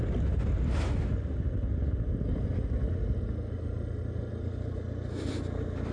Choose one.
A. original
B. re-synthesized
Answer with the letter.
A